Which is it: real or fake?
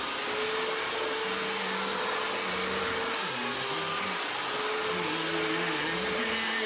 real